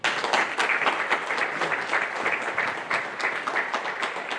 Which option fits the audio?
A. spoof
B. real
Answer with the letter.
B